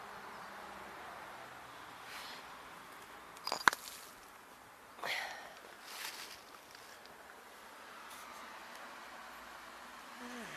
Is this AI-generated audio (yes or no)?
no